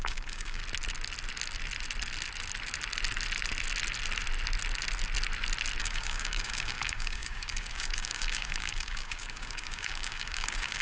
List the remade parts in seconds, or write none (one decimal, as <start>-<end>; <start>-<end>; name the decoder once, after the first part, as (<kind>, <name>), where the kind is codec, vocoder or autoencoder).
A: 0.0-0.6 (codec, DAC); 5.8-10.8